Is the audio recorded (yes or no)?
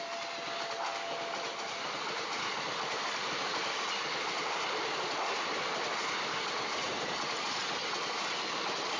yes